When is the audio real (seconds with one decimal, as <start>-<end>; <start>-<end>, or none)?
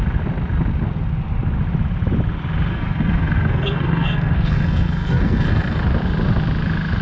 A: 0.0-2.7; 5.8-7.0